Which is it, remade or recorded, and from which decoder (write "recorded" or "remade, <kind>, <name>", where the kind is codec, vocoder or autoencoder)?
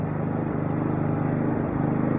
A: recorded